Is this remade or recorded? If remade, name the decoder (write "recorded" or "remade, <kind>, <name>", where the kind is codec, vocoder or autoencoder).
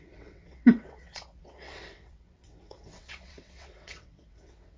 remade, vocoder, WaveNeXt